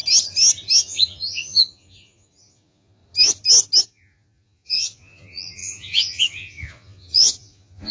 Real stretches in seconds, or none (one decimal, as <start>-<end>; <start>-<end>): 0.0-0.8; 3.0-3.8